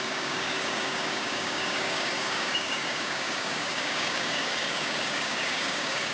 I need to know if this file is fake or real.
fake